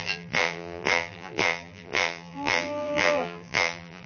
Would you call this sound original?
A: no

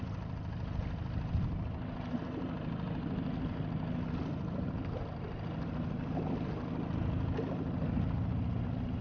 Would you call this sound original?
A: yes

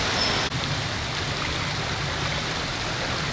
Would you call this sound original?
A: yes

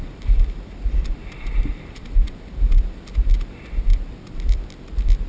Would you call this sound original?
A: yes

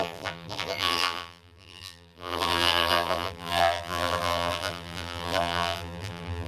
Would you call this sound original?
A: no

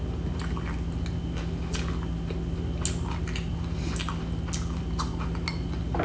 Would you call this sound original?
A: yes